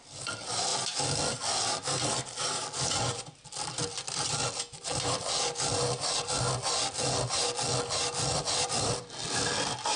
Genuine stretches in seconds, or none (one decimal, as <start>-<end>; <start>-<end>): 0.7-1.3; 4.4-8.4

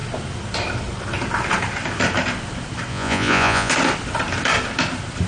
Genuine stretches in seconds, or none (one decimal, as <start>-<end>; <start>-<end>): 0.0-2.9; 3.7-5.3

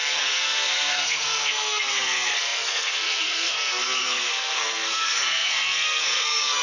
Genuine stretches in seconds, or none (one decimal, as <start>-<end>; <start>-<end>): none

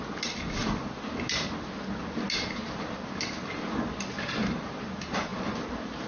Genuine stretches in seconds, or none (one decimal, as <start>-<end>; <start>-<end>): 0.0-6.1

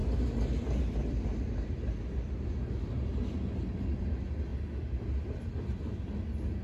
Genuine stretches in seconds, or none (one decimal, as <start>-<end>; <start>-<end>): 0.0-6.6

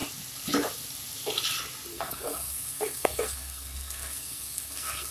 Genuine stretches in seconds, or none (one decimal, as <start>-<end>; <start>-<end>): 0.0-1.9

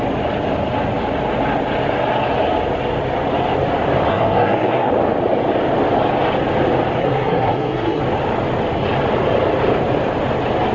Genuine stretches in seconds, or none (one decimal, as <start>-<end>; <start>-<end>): 0.0-4.1; 4.9-7.0; 8.0-10.7